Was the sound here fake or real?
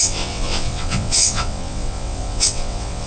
fake